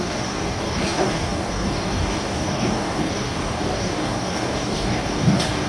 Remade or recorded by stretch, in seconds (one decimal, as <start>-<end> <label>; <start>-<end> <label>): 0.0-5.7 remade